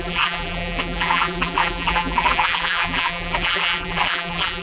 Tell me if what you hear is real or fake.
fake